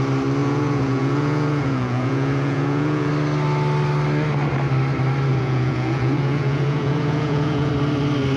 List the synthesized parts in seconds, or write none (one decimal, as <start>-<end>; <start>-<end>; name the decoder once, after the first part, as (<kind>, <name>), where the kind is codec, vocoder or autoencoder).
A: 0.4-3.1 (vocoder, Vocos); 5.3-7.7